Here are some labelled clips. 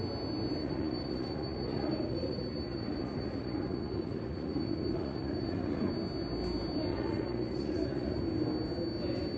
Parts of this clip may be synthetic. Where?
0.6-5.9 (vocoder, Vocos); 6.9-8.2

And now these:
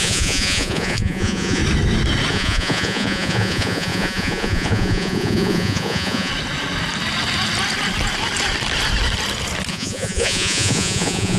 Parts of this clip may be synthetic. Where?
0.0-1.6 (vocoder, Vocos); 2.3-6.3; 9.7-11.4

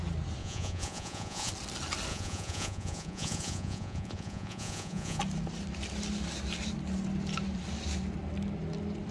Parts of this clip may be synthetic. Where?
0.4-1.5 (vocoder, Vocos); 2.1-5.2

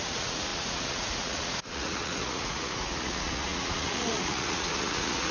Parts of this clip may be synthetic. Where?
0.0-5.3 (vocoder, Vocos)